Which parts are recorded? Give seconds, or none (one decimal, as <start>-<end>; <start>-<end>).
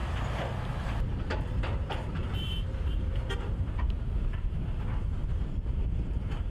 0.0-0.8